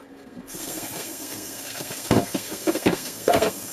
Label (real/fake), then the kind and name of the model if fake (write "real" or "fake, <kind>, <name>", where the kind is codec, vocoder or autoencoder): fake, codec, SNAC